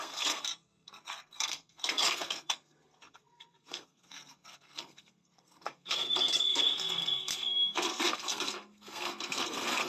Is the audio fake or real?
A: fake